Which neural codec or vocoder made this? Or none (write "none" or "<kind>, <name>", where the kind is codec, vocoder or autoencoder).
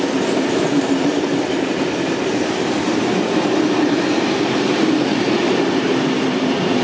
vocoder, BigVGAN v2